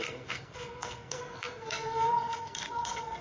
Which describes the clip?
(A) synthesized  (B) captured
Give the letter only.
A